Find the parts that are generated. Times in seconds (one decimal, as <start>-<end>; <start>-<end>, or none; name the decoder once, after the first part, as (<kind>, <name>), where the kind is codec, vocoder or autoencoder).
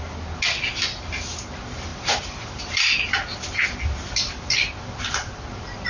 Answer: none